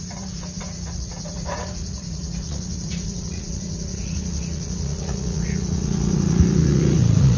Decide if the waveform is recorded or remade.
remade